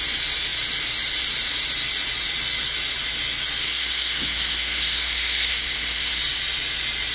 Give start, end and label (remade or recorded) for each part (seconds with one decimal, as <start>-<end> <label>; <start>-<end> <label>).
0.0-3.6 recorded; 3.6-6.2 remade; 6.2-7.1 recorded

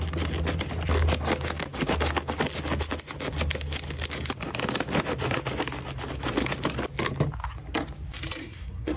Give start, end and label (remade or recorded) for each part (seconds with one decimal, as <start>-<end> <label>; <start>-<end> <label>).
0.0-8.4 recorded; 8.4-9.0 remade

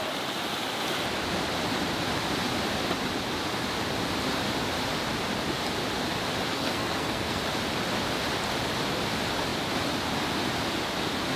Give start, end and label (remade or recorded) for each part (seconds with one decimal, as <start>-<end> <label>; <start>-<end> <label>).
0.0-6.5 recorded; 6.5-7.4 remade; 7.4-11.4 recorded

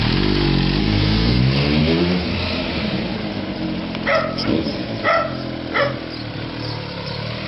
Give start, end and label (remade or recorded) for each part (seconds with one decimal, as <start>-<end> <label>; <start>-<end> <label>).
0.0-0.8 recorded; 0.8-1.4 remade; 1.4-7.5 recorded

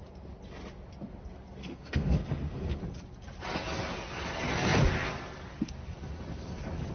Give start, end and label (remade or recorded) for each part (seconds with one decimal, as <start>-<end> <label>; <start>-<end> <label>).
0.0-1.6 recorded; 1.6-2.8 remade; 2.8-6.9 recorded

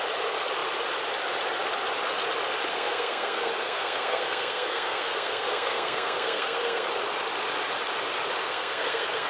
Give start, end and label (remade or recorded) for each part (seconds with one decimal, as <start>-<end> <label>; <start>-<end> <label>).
0.0-2.7 recorded; 2.7-6.9 remade; 6.9-8.4 recorded; 8.4-9.3 remade

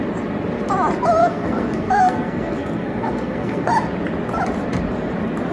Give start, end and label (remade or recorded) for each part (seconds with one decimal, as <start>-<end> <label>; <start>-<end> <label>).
0.0-1.2 recorded; 1.2-3.7 remade; 3.7-5.5 recorded